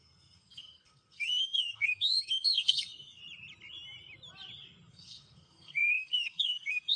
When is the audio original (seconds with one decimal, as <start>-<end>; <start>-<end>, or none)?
3.2-4.9